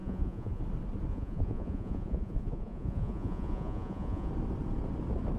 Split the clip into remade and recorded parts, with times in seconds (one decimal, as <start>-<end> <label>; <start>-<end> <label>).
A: 0.0-0.6 remade; 0.6-1.1 recorded; 1.1-4.3 remade; 4.3-5.4 recorded